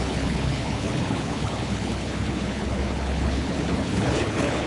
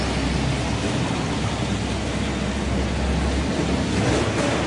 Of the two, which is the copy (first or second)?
first